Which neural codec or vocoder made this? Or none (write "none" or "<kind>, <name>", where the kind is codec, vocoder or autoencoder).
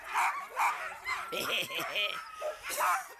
vocoder, BigVGAN v2